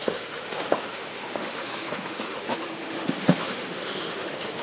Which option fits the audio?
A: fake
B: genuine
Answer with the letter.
A